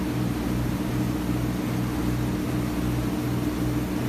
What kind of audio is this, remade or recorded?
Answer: recorded